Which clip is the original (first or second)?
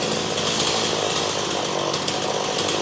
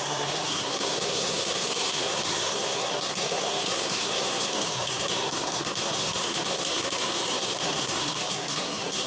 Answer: first